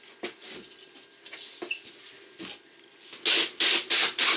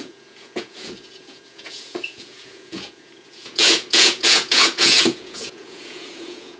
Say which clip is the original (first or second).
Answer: first